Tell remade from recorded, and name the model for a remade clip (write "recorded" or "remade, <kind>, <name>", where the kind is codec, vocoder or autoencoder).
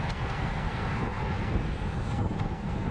remade, codec, SNAC